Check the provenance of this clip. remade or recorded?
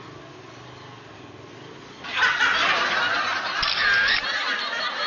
recorded